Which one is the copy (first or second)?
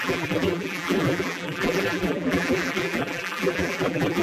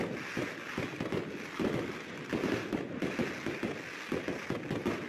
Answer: first